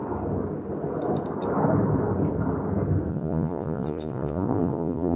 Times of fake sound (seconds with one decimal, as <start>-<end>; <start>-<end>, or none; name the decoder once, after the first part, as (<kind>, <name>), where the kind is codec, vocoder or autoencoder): 3.1-5.2 (vocoder, Vocos)